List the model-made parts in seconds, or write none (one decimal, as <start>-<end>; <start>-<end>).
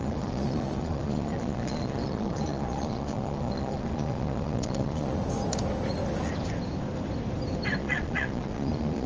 0.0-5.2; 7.8-9.1